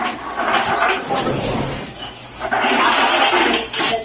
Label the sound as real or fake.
real